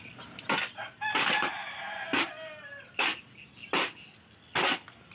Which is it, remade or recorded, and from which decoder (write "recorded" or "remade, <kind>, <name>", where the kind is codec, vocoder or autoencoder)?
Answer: recorded